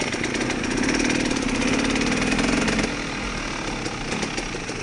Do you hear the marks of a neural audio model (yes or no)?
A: no